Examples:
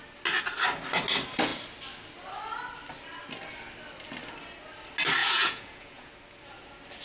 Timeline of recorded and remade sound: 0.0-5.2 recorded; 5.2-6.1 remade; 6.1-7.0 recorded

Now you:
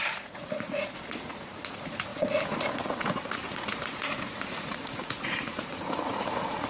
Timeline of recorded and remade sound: 0.0-6.7 remade

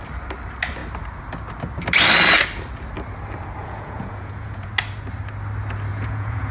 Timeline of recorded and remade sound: 0.0-3.6 recorded; 3.6-4.7 remade; 4.7-5.9 recorded; 5.9-6.5 remade